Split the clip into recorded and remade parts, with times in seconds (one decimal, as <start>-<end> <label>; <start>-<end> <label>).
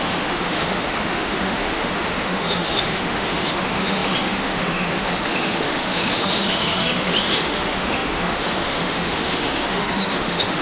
0.0-10.6 remade